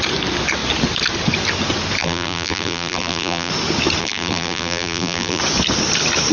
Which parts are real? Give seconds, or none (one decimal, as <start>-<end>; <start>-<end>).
0.0-2.0; 3.5-4.0; 5.4-6.3

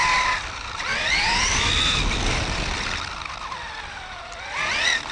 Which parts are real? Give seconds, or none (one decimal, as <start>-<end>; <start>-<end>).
3.1-5.1

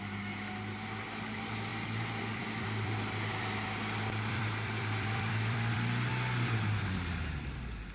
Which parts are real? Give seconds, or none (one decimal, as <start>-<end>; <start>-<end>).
1.7-2.2; 6.1-7.5

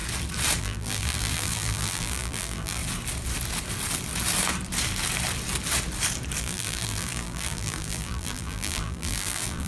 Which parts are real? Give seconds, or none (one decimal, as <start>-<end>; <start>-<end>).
0.0-0.6; 2.8-6.4

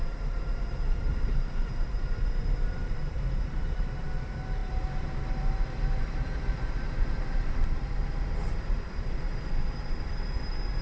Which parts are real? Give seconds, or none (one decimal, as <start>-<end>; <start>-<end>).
none

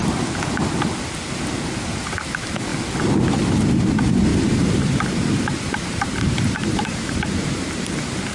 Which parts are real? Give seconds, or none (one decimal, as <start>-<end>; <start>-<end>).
0.0-4.3; 7.7-8.3